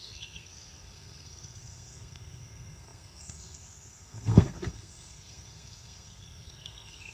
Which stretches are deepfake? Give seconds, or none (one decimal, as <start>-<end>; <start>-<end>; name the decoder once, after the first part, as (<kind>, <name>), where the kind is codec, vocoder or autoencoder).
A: 0.0-7.1 (codec, SNAC)

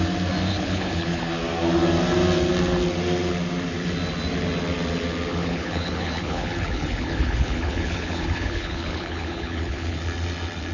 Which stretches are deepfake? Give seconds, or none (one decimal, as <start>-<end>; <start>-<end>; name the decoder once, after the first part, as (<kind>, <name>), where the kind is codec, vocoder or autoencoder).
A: 0.5-1.2 (codec, HILCodec); 5.3-10.0

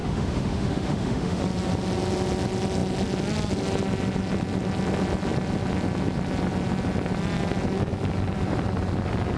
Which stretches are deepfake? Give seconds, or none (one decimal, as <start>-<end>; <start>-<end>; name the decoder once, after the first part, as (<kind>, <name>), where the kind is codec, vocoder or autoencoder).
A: 0.0-1.4 (autoencoder, DAC-VAE)

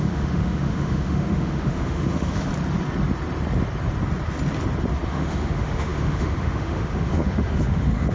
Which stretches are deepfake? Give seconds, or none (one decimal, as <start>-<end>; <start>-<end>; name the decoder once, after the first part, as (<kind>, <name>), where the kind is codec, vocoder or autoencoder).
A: 0.0-2.5 (autoencoder, DAC-VAE); 5.1-8.1